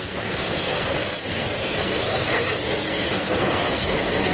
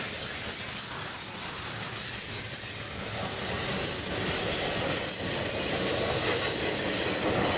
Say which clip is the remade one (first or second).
first